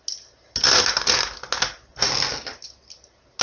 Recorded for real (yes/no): yes